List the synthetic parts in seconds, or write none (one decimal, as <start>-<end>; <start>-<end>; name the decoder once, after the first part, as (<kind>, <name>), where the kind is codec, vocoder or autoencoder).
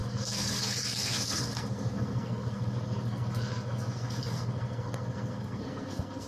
0.0-6.3 (codec, SNAC)